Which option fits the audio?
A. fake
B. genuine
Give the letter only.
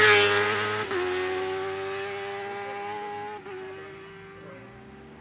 B